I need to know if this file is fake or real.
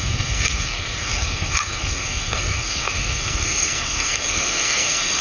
fake